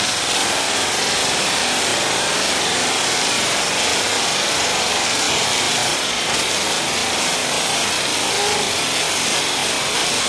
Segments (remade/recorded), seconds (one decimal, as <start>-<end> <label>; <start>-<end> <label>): 0.0-5.8 recorded; 5.8-6.5 remade; 6.5-10.3 recorded